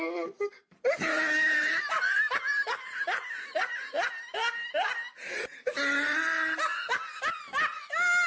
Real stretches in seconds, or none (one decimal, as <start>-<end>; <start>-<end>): 0.0-8.3